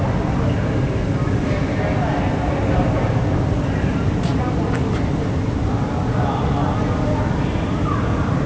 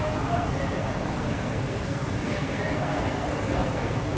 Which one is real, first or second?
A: first